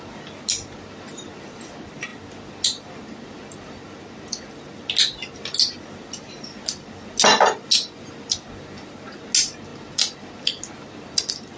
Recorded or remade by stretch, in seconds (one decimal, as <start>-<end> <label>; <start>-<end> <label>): 0.0-9.7 recorded; 9.7-10.9 remade; 10.9-11.6 recorded